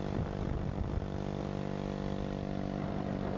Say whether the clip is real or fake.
real